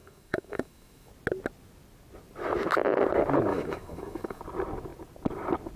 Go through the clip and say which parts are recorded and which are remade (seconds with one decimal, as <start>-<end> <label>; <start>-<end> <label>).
0.0-1.1 remade; 1.1-3.5 recorded; 3.5-4.4 remade; 4.4-5.8 recorded